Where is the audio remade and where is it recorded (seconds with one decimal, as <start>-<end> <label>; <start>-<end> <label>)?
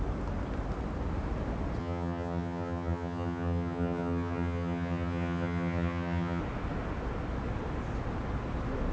0.0-1.8 recorded; 1.8-6.4 remade; 6.4-8.9 recorded